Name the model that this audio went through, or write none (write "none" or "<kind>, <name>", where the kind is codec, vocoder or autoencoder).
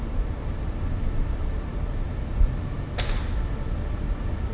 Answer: none